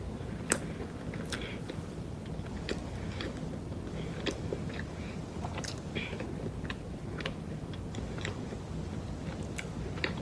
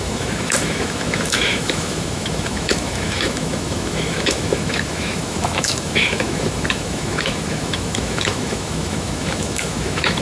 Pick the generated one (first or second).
second